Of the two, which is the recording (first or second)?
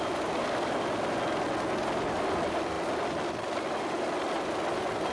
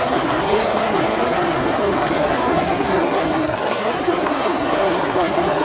first